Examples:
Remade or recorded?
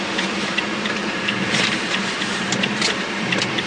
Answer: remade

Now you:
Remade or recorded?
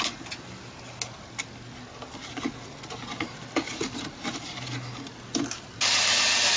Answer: recorded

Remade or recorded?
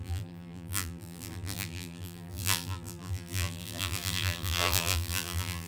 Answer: remade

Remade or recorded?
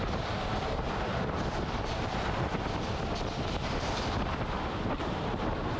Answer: remade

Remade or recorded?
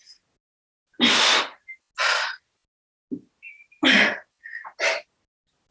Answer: recorded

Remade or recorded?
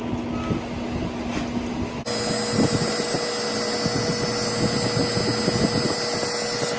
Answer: recorded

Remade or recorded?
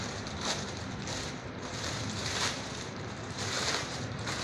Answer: remade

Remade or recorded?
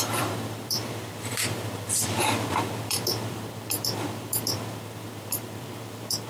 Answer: remade